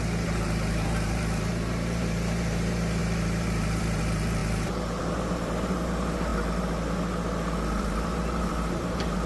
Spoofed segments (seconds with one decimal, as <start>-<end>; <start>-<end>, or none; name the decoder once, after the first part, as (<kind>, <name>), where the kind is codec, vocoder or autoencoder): 0.0-6.3 (vocoder, BigVGAN v2); 7.8-9.3